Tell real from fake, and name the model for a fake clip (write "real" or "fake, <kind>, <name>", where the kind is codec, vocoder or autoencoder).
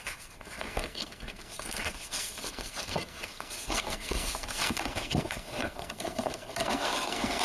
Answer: fake, codec, SNAC